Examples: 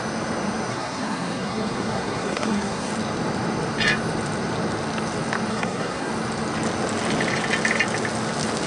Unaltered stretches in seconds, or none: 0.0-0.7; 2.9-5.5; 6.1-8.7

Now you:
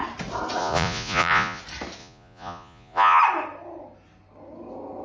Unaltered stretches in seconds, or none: 0.0-0.6; 1.6-2.0; 3.2-5.0

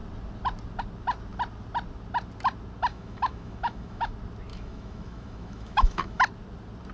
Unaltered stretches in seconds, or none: 0.0-2.9; 4.1-4.5; 6.2-6.9

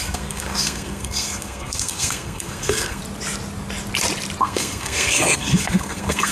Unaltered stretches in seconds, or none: 3.0-4.4

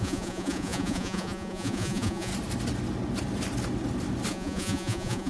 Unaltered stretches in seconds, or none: 2.3-4.3

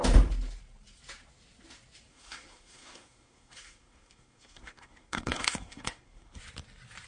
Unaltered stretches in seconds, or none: 0.0-2.1; 6.4-7.1

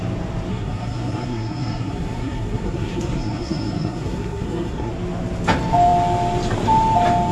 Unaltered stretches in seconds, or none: 0.0-0.5; 4.9-7.3